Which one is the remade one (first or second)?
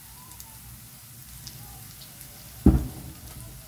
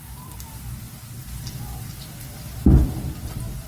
second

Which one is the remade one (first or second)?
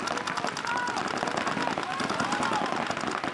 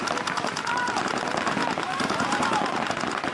second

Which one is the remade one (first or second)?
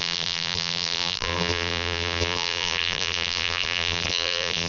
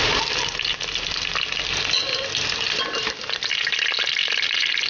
first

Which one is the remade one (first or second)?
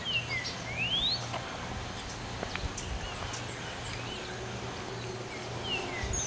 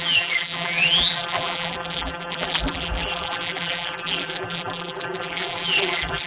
second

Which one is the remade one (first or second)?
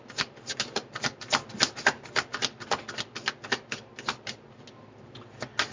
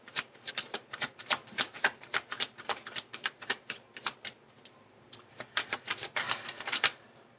second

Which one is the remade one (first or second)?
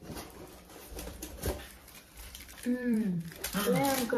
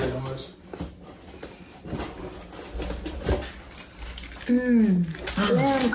first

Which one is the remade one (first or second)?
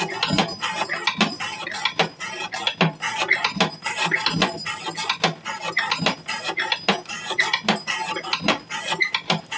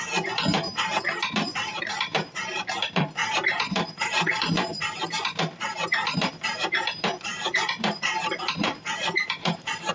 second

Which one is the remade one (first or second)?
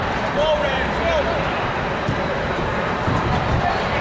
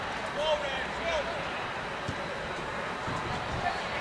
first